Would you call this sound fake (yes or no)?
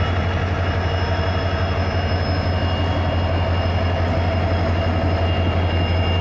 no